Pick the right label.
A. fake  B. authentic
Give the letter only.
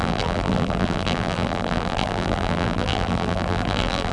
A